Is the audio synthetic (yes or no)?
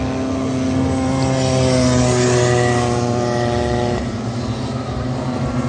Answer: no